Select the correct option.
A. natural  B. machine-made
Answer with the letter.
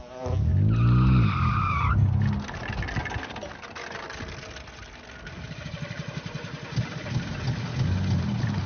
A